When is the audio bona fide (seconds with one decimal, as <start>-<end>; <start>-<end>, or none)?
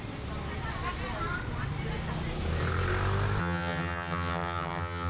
0.0-3.4